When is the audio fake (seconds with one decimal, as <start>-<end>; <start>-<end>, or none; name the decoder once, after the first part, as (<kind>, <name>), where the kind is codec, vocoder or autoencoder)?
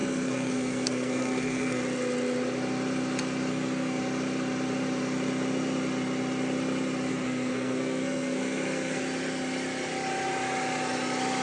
0.0-1.8 (codec, SNAC); 3.5-4.0; 7.1-9.0